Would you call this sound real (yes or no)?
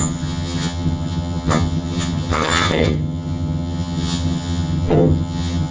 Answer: no